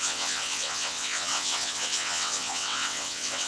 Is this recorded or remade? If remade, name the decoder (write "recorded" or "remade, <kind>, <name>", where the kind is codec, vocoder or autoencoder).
remade, vocoder, WaveNeXt